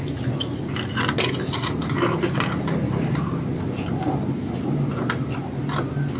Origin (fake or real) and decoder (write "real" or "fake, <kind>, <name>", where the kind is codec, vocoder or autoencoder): real